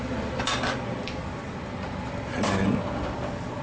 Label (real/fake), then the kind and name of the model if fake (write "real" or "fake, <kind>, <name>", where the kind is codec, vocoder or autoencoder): fake, vocoder, BigVGAN v2